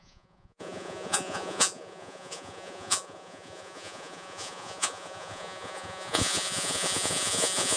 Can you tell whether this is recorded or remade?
remade